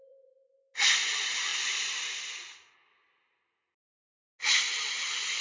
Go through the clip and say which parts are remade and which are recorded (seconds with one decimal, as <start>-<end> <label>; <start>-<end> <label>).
0.0-5.4 recorded